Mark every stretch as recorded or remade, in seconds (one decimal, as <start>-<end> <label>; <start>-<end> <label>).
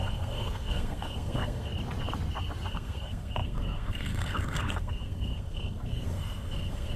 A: 0.0-1.7 remade; 1.7-2.7 recorded; 2.7-7.0 remade